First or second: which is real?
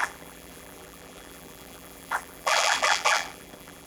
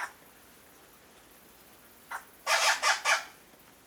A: second